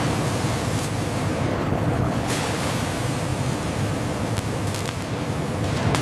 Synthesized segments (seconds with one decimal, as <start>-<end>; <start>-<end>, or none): 1.5-2.7